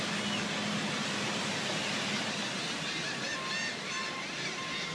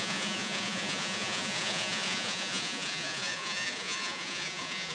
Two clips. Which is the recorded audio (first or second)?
first